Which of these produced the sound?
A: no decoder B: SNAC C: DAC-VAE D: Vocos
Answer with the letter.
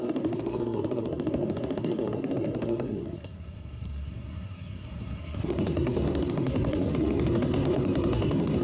B